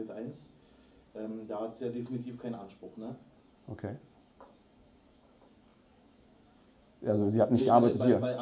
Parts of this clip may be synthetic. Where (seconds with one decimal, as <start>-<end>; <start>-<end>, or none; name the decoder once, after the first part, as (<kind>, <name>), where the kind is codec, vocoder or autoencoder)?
0.0-0.5 (autoencoder, DAC-VAE); 3.4-8.4